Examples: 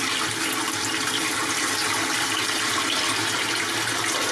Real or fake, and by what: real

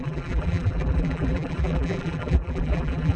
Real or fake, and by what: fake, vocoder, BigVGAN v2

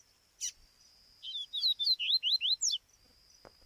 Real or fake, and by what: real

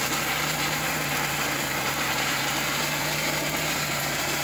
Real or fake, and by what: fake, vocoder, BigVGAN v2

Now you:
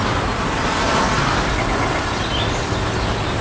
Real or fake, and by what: real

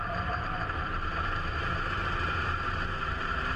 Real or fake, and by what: fake, vocoder, BigVGAN v2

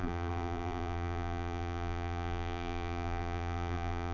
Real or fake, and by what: fake, vocoder, BigVGAN v2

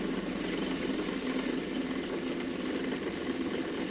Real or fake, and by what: real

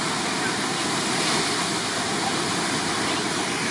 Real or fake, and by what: real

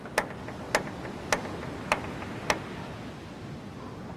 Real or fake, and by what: real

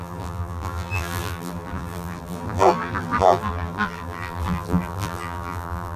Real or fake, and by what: fake, vocoder, BigVGAN v2